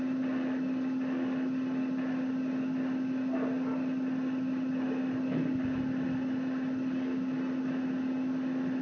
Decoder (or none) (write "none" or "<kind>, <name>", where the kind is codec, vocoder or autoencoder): none